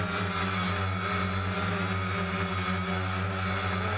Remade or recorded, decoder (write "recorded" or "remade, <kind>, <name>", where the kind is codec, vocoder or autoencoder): recorded